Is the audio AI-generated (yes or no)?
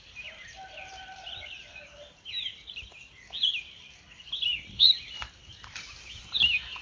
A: yes